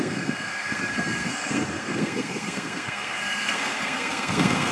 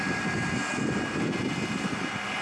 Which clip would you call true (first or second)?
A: second